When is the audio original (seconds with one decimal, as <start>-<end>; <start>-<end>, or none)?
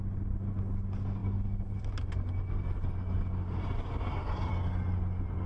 0.0-5.5